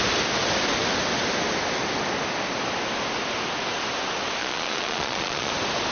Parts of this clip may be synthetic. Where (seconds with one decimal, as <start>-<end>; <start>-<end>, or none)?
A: 4.4-5.5